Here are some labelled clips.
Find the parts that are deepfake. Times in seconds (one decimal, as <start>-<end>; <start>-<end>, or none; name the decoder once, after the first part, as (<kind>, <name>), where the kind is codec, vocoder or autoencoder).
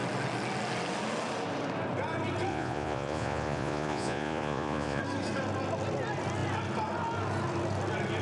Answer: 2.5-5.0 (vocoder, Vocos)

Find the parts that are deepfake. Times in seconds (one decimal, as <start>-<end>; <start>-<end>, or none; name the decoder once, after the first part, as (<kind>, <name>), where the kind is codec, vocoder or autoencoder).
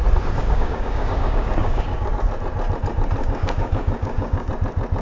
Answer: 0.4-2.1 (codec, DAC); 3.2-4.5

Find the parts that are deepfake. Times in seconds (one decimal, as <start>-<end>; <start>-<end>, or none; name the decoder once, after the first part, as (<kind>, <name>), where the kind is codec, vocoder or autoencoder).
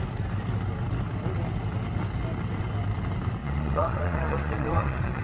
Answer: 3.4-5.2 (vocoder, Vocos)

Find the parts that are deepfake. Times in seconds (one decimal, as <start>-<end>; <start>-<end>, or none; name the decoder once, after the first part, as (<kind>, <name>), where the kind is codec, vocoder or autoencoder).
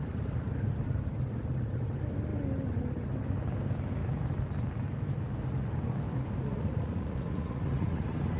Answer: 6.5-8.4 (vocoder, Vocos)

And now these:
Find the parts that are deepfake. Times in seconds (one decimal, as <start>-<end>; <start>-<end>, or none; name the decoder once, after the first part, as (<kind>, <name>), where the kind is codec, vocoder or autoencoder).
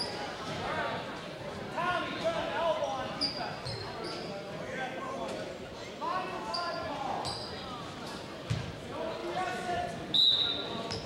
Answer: none